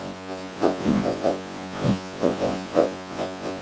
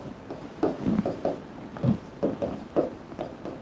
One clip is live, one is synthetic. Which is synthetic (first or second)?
first